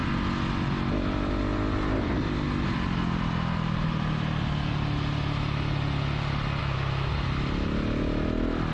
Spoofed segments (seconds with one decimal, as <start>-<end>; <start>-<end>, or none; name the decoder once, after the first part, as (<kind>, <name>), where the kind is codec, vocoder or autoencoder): 6.6-7.1 (autoencoder, DAC-VAE)